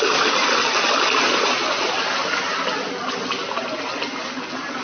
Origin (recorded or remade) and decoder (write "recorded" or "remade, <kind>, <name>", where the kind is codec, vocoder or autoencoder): recorded